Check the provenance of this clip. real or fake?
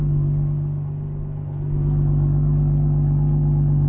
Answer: real